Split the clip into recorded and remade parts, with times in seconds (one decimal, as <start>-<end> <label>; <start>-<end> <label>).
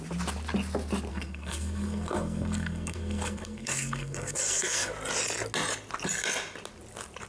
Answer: 0.0-1.1 recorded; 1.1-4.9 remade; 4.9-7.3 recorded